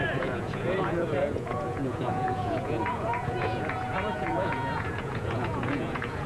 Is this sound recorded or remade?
remade